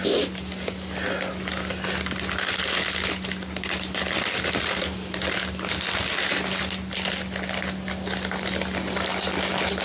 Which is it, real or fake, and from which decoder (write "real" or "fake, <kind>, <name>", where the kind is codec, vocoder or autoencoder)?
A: real